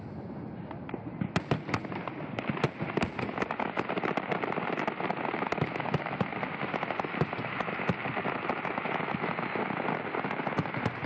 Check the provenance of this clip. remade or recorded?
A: recorded